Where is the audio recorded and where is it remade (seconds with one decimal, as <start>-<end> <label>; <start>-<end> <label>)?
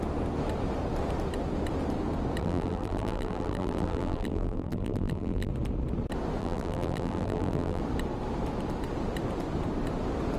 0.0-2.4 recorded; 2.4-5.5 remade; 5.5-6.4 recorded; 6.4-7.8 remade; 7.8-10.4 recorded